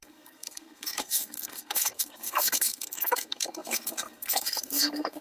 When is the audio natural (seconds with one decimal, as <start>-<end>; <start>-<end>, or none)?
none